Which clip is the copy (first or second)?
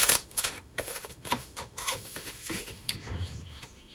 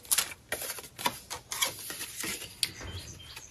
first